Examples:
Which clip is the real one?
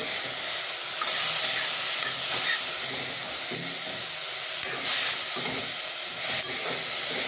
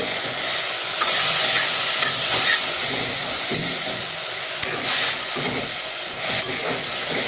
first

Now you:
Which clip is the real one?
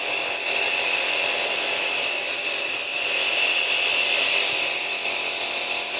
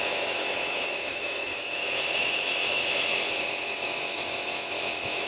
first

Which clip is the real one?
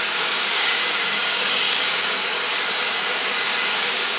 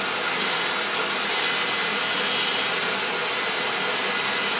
second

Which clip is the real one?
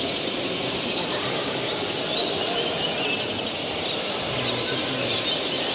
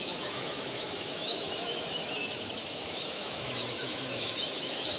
first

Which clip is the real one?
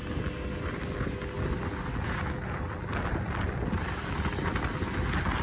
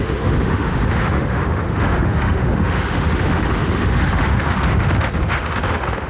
first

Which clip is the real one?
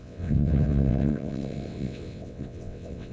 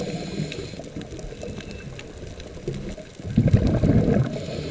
second